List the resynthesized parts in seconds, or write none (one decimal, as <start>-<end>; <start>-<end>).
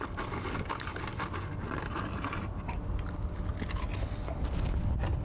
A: none